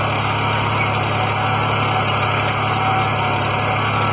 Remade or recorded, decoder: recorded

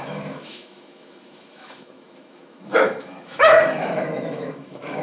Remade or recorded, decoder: remade, autoencoder, DAC-VAE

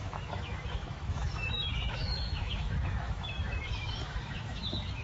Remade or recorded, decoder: remade, autoencoder, DAC-VAE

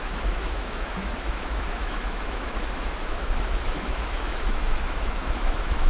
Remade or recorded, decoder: remade, autoencoder, DAC-VAE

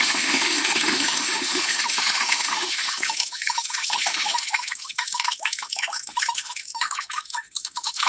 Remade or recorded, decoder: remade, autoencoder, DAC-VAE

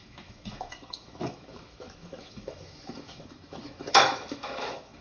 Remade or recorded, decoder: remade, autoencoder, DAC-VAE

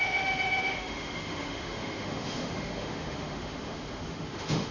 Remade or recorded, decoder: remade, autoencoder, DAC-VAE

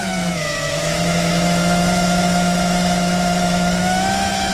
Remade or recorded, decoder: remade, autoencoder, DAC-VAE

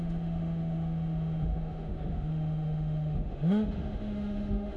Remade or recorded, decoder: remade, autoencoder, DAC-VAE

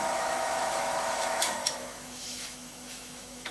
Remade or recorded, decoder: remade, autoencoder, DAC-VAE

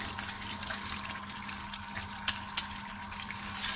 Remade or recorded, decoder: recorded